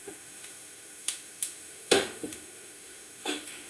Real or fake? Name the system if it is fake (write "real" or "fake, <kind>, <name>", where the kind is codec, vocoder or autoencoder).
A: fake, autoencoder, DAC-VAE